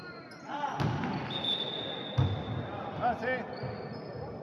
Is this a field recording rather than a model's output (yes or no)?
yes